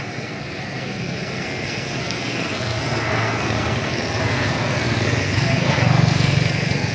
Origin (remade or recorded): remade